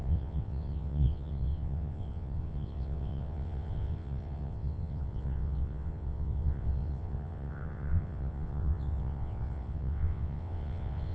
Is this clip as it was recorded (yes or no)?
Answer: no